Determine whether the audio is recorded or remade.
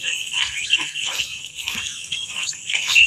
remade